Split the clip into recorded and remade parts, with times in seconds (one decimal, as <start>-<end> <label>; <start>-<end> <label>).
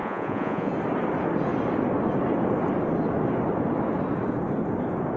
0.0-0.7 remade; 0.7-5.2 recorded